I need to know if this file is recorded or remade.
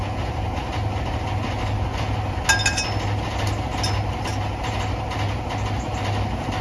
recorded